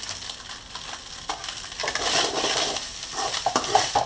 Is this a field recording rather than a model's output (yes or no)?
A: yes